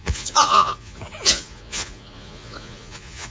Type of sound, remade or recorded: remade